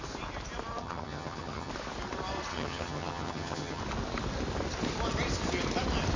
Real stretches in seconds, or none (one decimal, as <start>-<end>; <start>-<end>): 0.0-0.8; 1.7-2.5; 3.8-6.2